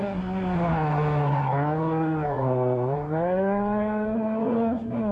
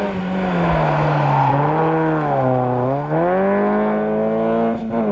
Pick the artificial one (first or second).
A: first